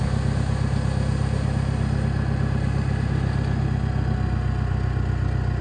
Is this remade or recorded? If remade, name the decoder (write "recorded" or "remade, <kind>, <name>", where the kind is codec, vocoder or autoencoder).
recorded